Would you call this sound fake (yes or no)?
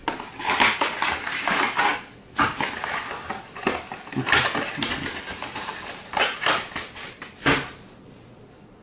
no